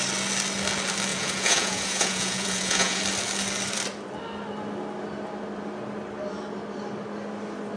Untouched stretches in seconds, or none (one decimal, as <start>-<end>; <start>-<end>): 0.0-1.1; 3.0-7.8